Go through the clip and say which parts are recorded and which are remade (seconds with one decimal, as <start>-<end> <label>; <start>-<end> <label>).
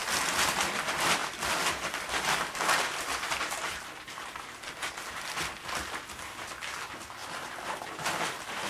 0.0-1.2 recorded; 1.2-5.6 remade; 5.6-7.2 recorded; 7.2-8.7 remade